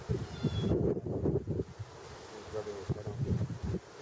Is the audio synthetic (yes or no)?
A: no